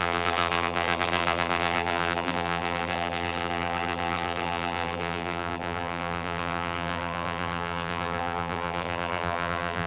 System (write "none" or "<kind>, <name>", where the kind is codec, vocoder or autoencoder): vocoder, BigVGAN v2